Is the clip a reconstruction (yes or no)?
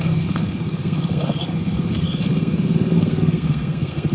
yes